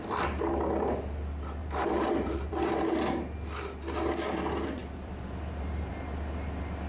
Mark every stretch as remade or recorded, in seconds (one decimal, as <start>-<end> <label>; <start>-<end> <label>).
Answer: 0.0-1.6 recorded; 1.6-2.5 remade; 2.5-4.8 recorded; 4.8-5.9 remade; 5.9-6.9 recorded